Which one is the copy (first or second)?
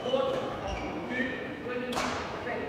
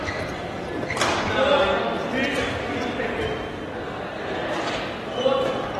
first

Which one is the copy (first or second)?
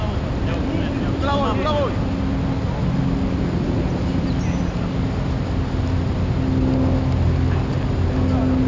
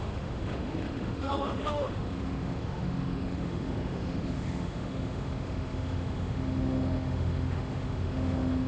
second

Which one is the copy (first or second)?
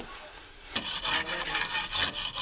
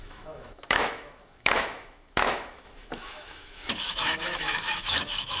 second